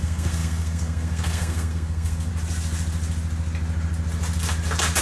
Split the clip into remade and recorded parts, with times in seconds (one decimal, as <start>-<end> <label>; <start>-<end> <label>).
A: 0.0-2.3 remade; 2.3-5.0 recorded